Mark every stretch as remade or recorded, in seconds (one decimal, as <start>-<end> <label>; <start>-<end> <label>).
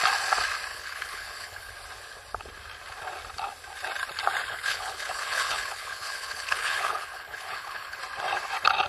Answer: 0.0-0.7 recorded; 0.7-1.7 remade; 1.7-4.4 recorded; 4.4-8.0 remade; 8.0-8.9 recorded